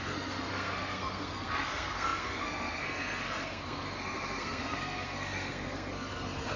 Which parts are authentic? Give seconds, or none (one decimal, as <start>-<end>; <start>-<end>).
none